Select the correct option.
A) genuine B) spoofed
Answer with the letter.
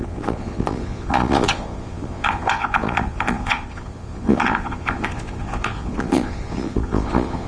B